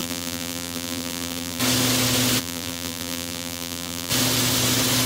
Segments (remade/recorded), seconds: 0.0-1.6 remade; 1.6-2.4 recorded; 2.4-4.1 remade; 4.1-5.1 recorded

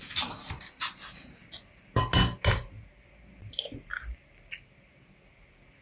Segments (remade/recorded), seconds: 0.0-5.8 recorded

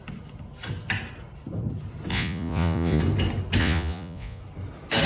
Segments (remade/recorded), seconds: 0.0-2.1 recorded; 2.1-3.0 remade; 3.0-3.6 recorded; 3.6-4.4 remade; 4.4-5.1 recorded